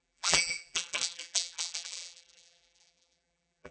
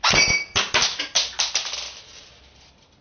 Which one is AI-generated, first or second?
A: first